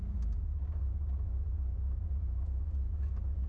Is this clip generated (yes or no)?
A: no